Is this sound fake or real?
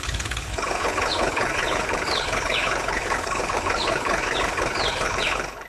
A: fake